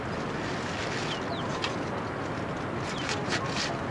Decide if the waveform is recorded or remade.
recorded